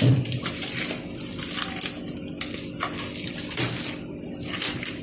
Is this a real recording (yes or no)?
yes